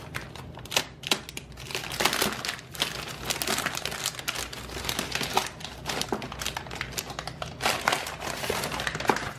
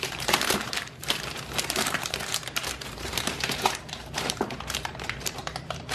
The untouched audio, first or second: first